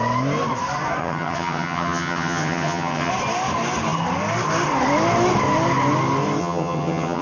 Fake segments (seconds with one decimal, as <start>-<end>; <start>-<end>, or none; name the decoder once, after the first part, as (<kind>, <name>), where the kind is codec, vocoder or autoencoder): 1.0-3.1 (vocoder, HiFi-GAN); 6.4-7.2